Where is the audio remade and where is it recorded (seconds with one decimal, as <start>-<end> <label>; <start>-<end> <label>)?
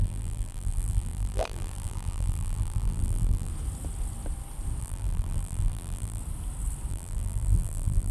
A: 0.0-3.5 remade; 3.5-4.8 recorded; 4.8-6.2 remade; 6.2-6.9 recorded; 6.9-8.1 remade